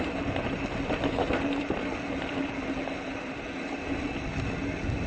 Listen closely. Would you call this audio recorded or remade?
recorded